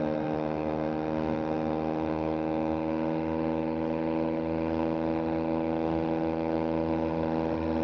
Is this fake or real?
fake